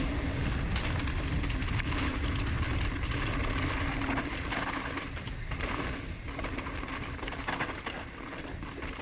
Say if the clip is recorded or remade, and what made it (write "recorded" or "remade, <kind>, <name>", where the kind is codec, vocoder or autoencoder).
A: recorded